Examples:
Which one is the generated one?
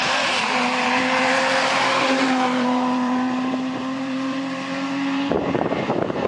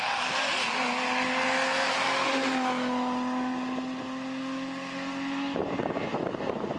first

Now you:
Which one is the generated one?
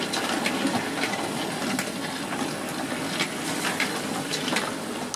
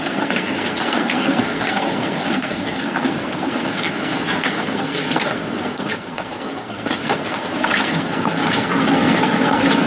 second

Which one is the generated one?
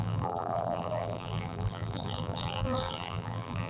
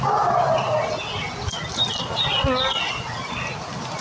first